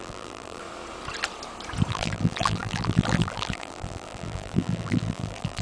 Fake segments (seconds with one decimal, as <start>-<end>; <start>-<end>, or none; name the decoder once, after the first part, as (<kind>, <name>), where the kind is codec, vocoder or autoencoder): 0.0-0.6 (vocoder, BigVGAN v2); 1.9-5.6